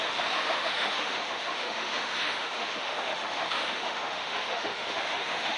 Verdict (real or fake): fake